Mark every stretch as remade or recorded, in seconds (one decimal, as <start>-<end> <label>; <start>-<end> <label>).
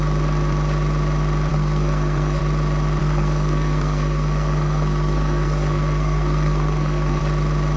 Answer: 0.0-1.5 recorded; 1.5-2.4 remade; 2.4-3.0 recorded; 3.0-7.2 remade; 7.2-7.8 recorded